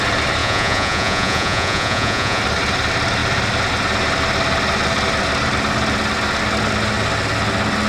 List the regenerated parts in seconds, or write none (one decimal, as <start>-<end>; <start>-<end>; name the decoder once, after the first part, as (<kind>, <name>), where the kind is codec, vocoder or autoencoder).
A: 0.4-2.4 (vocoder, Vocos)